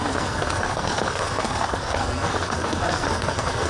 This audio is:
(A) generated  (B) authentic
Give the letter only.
A